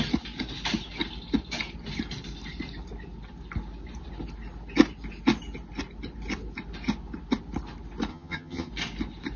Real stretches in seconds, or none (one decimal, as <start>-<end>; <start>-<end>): 0.0-8.1; 8.7-9.4